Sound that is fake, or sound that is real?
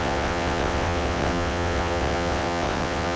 fake